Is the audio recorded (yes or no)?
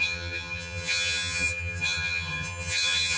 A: no